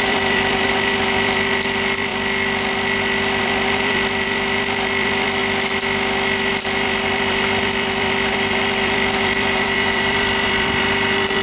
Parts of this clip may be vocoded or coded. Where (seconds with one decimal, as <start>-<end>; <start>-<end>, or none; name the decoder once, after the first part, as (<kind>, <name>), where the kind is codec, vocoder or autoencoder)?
0.0-5.4 (vocoder, BigVGAN v2); 6.5-11.4